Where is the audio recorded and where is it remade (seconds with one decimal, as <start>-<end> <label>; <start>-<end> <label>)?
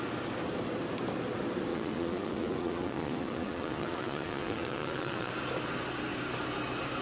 0.0-1.7 recorded; 1.7-5.3 remade; 5.3-7.0 recorded